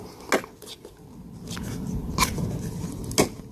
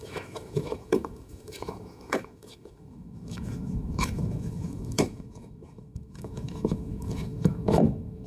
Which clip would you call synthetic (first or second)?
second